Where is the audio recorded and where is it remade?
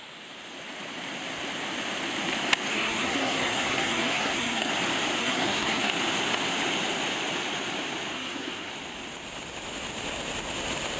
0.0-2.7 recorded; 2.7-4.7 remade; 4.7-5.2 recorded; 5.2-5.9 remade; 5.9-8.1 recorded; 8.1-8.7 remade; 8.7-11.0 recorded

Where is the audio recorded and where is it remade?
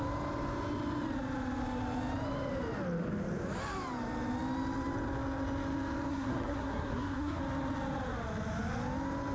0.0-6.1 recorded; 6.1-7.4 remade; 7.4-9.3 recorded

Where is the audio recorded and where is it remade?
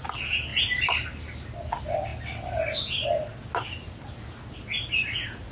0.0-5.5 recorded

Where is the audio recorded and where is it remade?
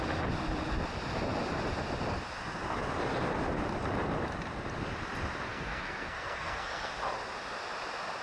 0.0-5.5 recorded; 5.5-6.9 remade; 6.9-8.2 recorded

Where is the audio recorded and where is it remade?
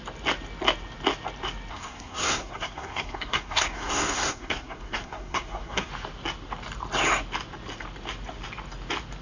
0.0-1.7 recorded; 1.7-5.9 remade; 5.9-9.2 recorded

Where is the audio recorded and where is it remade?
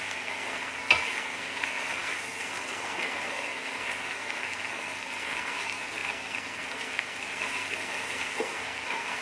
0.0-9.2 remade